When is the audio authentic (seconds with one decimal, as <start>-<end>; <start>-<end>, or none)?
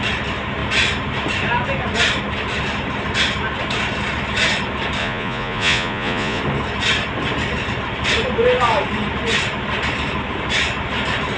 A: 0.0-5.0; 6.4-11.4